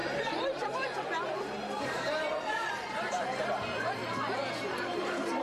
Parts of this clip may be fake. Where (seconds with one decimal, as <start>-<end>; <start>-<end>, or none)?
0.0-4.0; 4.5-5.4